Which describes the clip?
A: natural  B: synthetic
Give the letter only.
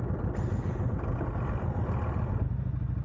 A